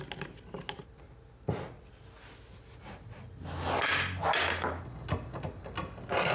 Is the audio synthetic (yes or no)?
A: no